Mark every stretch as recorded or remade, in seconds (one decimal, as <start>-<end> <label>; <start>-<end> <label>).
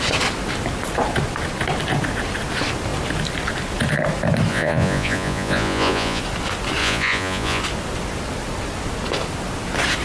0.0-4.5 recorded; 4.5-6.2 remade; 6.2-6.8 recorded; 6.8-7.6 remade; 7.6-10.0 recorded